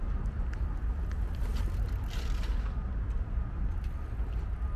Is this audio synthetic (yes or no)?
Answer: no